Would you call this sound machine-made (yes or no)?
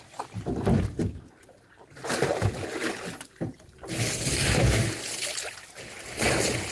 no